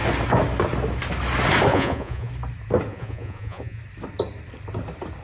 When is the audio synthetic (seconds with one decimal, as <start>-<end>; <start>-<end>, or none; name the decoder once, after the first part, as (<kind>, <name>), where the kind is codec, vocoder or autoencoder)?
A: 1.7-2.3 (vocoder, Vocos); 2.9-3.8

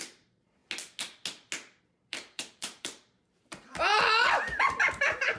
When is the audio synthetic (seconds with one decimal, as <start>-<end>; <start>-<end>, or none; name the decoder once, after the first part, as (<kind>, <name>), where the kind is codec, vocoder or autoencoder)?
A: 0.0-0.6 (vocoder, BigVGAN v2); 1.8-3.9; 5.0-5.4

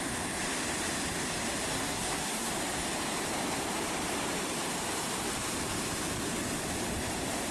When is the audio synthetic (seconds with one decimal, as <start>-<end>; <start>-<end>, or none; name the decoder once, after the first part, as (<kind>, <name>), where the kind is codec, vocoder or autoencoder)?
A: 1.7-2.5 (codec, SNAC)

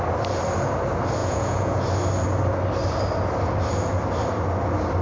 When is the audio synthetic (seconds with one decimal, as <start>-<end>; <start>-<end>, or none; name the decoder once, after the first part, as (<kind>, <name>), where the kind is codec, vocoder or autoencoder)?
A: 1.2-1.8 (vocoder, Vocos)

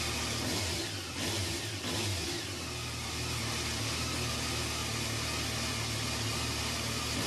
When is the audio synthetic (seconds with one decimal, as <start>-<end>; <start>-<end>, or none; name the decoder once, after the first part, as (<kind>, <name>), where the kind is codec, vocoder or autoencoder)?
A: none

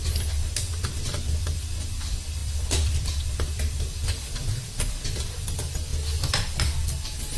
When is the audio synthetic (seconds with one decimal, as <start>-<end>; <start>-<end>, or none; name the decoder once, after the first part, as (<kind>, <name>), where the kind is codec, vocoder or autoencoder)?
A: 0.0-5.9 (vocoder, BigVGAN v2); 6.8-7.4

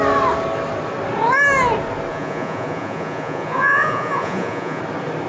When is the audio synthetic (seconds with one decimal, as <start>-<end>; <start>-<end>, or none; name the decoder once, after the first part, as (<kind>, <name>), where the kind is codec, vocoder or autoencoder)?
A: 2.1-4.8 (vocoder, Vocos)